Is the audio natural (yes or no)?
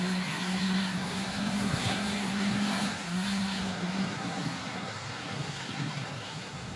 no